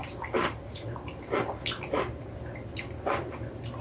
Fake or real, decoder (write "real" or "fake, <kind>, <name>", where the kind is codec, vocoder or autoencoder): real